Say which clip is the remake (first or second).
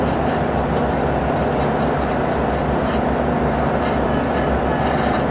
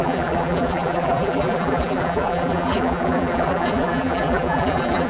second